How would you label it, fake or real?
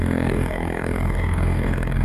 fake